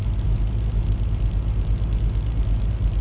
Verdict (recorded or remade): recorded